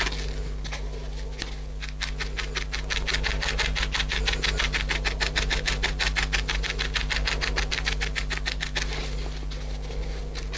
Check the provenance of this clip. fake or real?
real